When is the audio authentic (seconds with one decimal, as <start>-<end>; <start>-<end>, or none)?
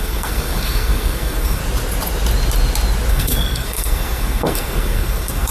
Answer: 1.6-3.1